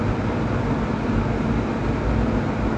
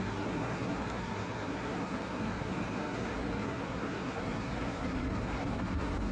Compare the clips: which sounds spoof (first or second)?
second